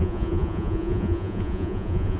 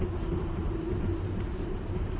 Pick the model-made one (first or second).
first